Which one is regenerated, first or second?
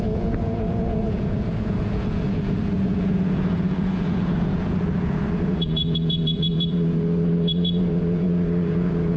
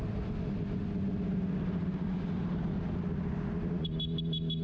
first